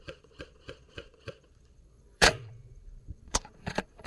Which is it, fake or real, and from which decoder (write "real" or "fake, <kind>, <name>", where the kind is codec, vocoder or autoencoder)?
fake, vocoder, Vocos